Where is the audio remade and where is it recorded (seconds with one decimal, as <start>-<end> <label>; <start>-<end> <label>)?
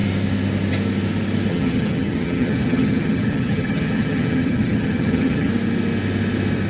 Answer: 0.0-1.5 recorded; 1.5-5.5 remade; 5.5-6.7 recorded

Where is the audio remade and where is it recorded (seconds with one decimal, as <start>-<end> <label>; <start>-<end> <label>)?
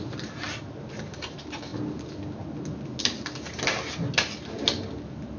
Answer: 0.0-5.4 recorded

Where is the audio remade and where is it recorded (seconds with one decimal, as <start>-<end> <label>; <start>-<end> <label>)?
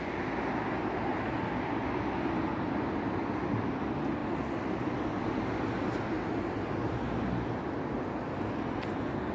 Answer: 0.0-9.3 recorded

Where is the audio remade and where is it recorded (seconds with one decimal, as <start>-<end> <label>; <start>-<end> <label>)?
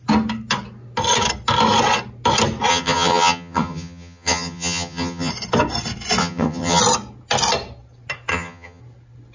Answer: 0.0-2.7 recorded; 2.7-5.3 remade; 5.3-6.2 recorded; 6.2-6.8 remade; 6.8-8.3 recorded; 8.3-8.8 remade; 8.8-9.3 recorded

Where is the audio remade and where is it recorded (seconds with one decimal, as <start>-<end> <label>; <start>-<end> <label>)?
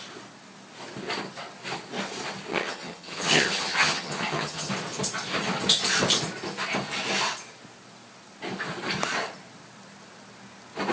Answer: 0.0-2.5 recorded; 2.5-4.7 remade; 4.7-10.9 recorded